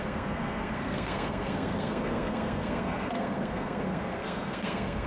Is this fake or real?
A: fake